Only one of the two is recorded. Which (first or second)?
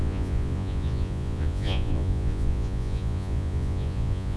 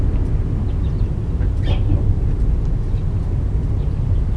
second